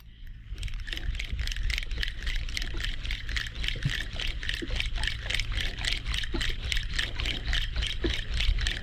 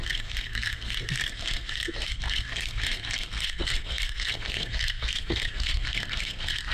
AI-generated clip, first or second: second